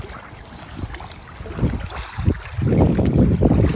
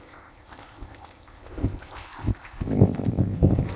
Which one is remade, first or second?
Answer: second